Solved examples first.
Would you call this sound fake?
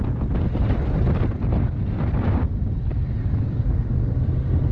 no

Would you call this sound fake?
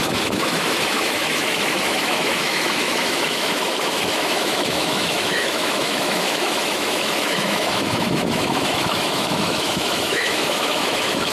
yes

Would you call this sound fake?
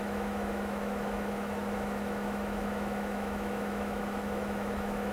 yes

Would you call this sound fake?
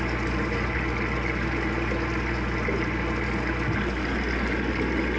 no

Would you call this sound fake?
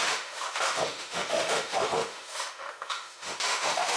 yes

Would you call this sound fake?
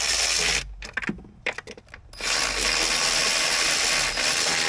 no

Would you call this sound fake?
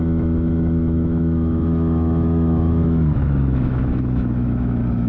yes